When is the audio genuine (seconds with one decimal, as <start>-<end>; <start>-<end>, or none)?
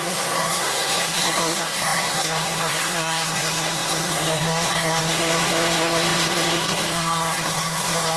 none